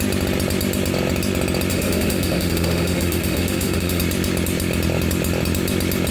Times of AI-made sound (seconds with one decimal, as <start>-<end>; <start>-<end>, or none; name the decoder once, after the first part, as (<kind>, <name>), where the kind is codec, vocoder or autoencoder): 1.7-4.0 (autoencoder, DAC-VAE)